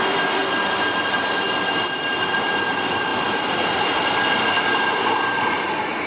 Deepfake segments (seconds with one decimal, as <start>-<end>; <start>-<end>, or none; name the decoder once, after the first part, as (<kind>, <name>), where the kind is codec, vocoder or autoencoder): 0.0-0.4 (vocoder, BigVGAN v2); 1.9-6.1